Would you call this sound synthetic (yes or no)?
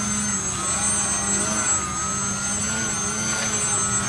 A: no